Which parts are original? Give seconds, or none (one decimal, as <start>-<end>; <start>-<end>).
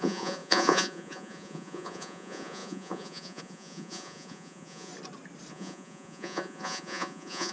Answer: 4.9-5.5